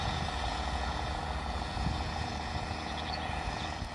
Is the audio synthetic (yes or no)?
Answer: yes